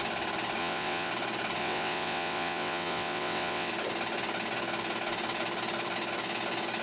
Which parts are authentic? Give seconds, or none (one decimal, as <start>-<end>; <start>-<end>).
0.0-0.6; 1.1-1.6; 3.7-6.8